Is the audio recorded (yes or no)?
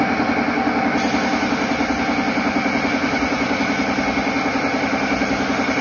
yes